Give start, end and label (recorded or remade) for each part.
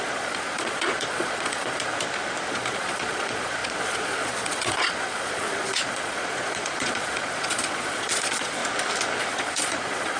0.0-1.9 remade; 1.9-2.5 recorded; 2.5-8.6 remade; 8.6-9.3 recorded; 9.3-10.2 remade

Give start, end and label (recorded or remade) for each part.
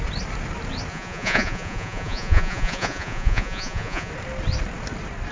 0.0-0.9 recorded; 0.9-4.1 remade; 4.1-5.3 recorded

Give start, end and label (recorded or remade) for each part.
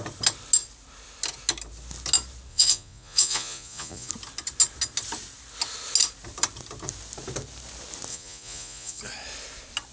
0.0-2.5 recorded; 2.5-4.1 remade; 4.1-8.1 recorded; 8.1-9.0 remade; 9.0-9.9 recorded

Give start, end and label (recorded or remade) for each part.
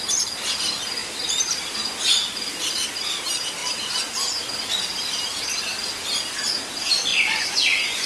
0.0-7.1 recorded; 7.1-8.1 remade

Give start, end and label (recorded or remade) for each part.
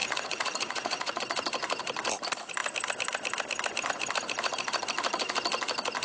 0.0-1.2 remade; 1.2-6.0 recorded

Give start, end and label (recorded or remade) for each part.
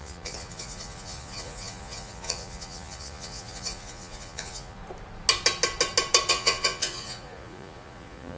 0.0-4.8 remade; 4.8-6.3 recorded; 6.3-8.4 remade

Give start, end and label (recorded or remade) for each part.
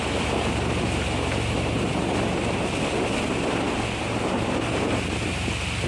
0.0-5.9 recorded